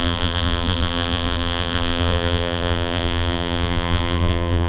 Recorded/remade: remade